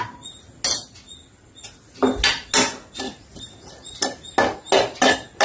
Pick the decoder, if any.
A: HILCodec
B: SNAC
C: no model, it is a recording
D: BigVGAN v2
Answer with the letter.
C